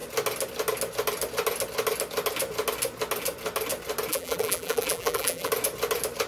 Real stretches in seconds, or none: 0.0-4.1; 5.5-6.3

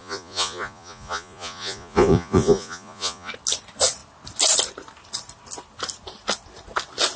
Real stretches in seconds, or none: 3.3-7.2

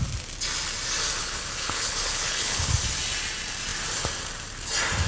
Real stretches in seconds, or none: 0.0-1.2; 2.7-5.1

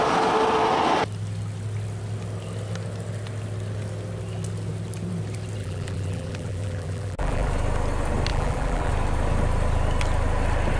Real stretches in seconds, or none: 0.0-5.6; 7.5-8.3; 8.9-10.8

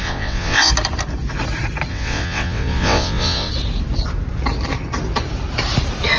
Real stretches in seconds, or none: 0.7-1.9; 3.5-6.2

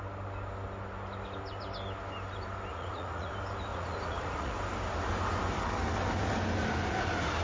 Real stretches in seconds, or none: 0.0-2.7; 3.3-3.7; 4.5-7.4

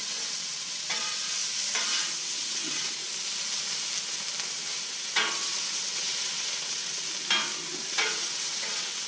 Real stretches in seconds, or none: 1.4-2.0; 3.0-4.5; 7.0-7.9

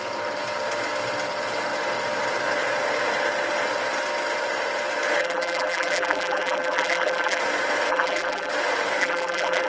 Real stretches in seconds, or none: 0.0-5.2; 7.4-7.9; 8.5-9.0